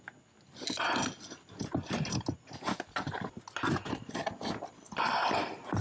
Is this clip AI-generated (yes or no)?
no